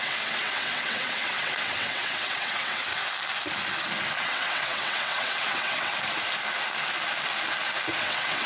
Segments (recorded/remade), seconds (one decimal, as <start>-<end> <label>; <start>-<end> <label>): 0.0-2.9 remade; 2.9-4.2 recorded; 4.2-5.9 remade; 5.9-8.0 recorded; 8.0-8.5 remade